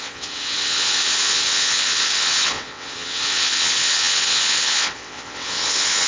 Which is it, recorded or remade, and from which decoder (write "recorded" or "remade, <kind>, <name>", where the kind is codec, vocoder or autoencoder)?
remade, vocoder, WaveNeXt